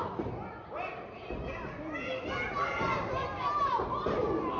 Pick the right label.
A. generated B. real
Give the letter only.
B